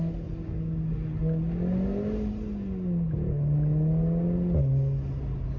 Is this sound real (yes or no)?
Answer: yes